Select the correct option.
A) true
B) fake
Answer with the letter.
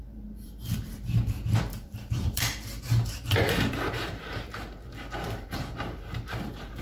B